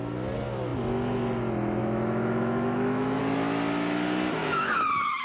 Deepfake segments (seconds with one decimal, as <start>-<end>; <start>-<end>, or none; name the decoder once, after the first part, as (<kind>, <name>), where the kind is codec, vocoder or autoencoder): 1.8-3.2 (autoencoder, DAC-VAE); 4.4-5.2